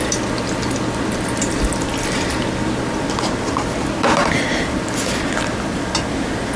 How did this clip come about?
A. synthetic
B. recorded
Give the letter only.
B